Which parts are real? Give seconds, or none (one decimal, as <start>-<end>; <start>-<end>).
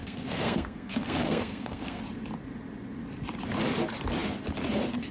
2.0-5.1